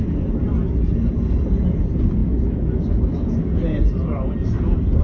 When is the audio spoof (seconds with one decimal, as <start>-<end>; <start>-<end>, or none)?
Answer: 0.0-0.6; 1.8-2.2; 3.8-5.0